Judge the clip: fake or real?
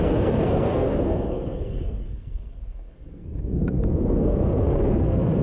fake